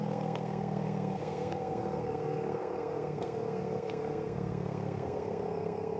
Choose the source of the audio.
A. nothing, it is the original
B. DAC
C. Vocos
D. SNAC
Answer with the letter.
D